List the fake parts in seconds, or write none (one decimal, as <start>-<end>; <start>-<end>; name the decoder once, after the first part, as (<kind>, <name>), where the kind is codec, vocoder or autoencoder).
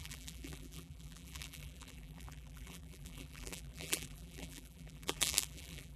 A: 0.0-6.0 (vocoder, BigVGAN v2)